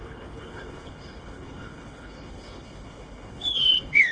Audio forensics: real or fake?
fake